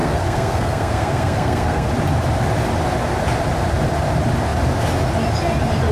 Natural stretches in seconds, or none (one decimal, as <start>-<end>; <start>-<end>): 1.9-5.9